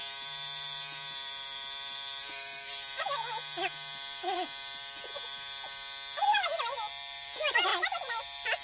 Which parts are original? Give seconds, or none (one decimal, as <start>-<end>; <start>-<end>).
0.0-8.6